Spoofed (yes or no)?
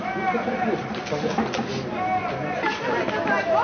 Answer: no